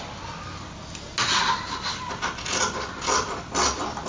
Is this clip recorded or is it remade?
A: recorded